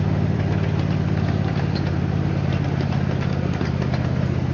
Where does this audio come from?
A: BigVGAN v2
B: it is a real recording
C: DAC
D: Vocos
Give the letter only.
A